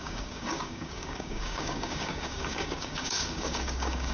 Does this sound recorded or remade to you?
remade